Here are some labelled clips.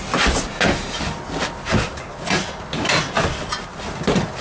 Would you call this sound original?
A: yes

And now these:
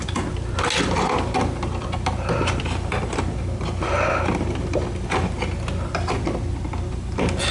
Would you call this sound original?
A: yes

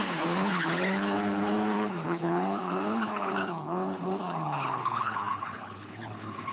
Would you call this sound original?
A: no